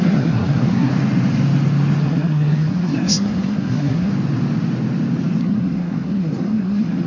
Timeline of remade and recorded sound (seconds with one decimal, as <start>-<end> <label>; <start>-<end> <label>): 0.0-0.9 remade; 0.9-2.0 recorded; 2.0-4.1 remade; 4.1-5.4 recorded; 5.4-7.1 remade